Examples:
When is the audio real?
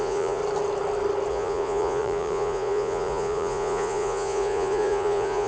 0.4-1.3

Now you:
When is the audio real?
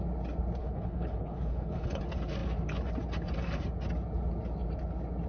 0.0-0.6; 2.0-5.3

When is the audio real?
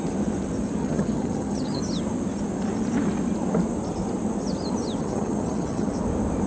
0.0-0.8; 1.8-5.0; 5.9-6.5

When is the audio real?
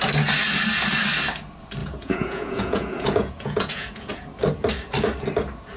0.0-1.8; 4.1-5.8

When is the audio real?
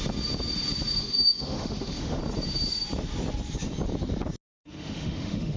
0.0-1.0; 2.2-4.6